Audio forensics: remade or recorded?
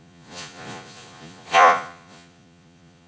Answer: remade